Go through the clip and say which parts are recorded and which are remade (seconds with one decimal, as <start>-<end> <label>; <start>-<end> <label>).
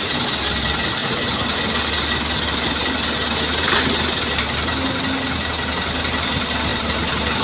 0.0-7.4 recorded